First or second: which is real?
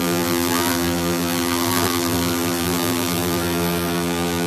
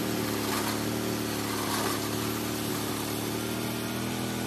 second